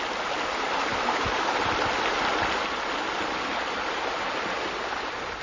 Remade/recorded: recorded